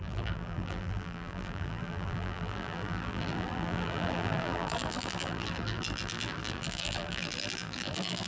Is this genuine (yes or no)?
no